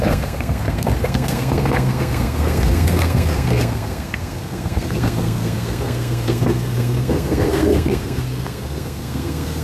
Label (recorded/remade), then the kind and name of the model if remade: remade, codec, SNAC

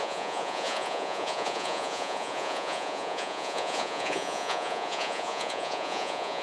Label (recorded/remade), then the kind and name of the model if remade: remade, vocoder, Vocos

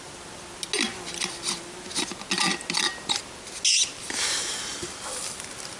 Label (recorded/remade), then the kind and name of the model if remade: recorded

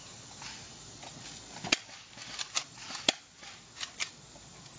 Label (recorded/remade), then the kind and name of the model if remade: recorded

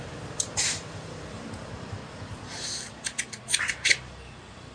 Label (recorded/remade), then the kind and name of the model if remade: remade, vocoder, BigVGAN v2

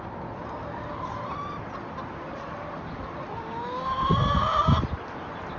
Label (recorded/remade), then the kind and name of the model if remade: recorded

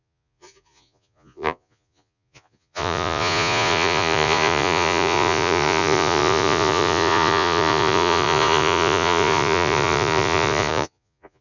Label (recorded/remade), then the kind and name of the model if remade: remade, vocoder, Vocos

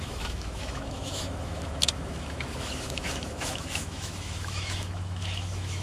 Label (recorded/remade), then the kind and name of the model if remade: remade, autoencoder, DAC-VAE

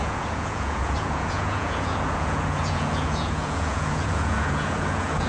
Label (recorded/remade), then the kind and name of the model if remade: remade, vocoder, Vocos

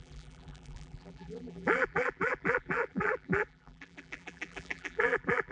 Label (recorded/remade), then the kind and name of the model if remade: remade, vocoder, BigVGAN v2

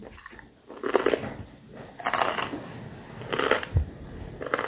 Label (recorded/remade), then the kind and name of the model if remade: recorded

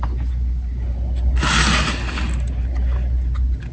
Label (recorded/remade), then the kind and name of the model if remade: recorded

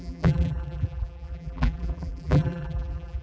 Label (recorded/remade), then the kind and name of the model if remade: remade, vocoder, BigVGAN v2